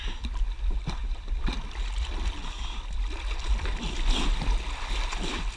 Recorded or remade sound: recorded